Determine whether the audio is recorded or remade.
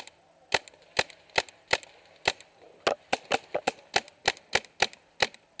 recorded